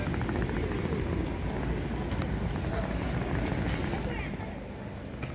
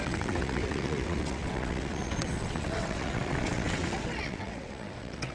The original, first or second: first